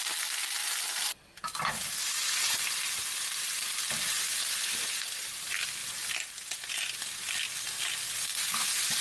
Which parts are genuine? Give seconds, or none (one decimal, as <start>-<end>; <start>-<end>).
0.0-9.0